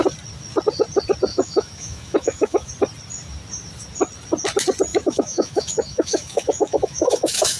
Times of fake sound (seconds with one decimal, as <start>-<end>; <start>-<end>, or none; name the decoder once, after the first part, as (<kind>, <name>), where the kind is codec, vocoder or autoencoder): 1.3-2.7 (autoencoder, DAC-VAE); 4.9-7.6

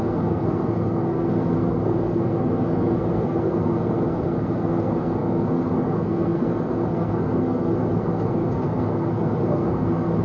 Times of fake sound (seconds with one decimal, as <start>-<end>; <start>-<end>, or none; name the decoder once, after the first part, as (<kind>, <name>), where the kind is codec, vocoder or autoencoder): 0.0-10.2 (codec, SNAC)